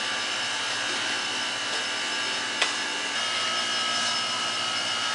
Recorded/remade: recorded